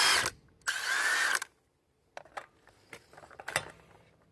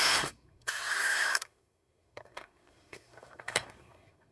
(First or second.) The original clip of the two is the first